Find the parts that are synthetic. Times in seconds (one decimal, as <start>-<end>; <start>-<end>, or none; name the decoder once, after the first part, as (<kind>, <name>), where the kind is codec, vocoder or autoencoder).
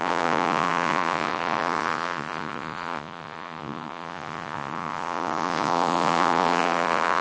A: 0.0-7.2 (vocoder, Vocos)